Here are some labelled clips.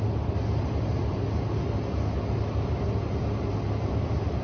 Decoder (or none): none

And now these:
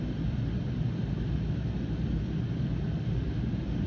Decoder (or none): none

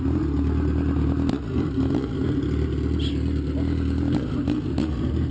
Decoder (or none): none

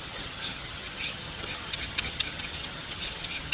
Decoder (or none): vocoder, HiFi-GAN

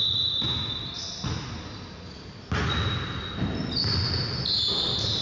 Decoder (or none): none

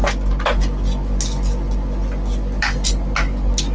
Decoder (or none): none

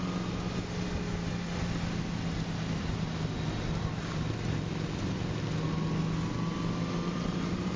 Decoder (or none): none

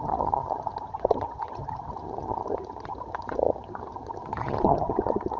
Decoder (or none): vocoder, HiFi-GAN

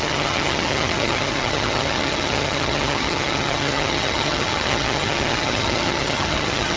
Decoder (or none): vocoder, HiFi-GAN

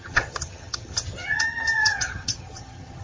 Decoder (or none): vocoder, HiFi-GAN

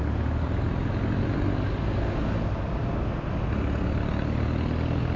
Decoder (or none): none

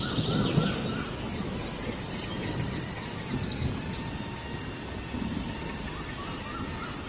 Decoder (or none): none